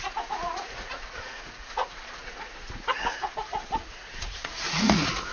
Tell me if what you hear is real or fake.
fake